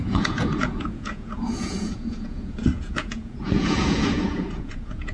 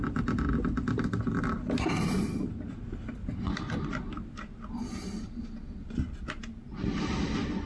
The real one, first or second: second